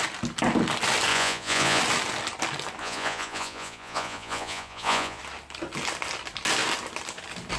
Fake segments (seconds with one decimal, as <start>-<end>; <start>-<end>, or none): 1.1-1.8; 2.8-5.2